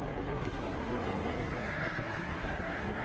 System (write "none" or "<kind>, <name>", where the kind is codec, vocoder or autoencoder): codec, SNAC